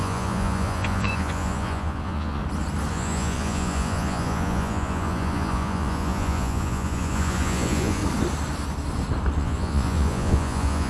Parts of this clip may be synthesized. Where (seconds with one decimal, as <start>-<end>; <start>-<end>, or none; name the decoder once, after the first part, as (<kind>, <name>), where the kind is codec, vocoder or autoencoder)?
0.0-2.4 (vocoder, Vocos); 2.9-8.0; 9.4-10.9